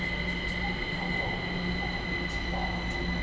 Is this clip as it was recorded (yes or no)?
yes